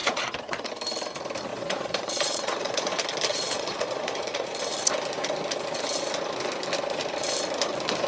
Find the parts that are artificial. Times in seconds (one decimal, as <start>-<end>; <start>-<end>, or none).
0.0-0.7; 1.5-2.9; 3.3-4.6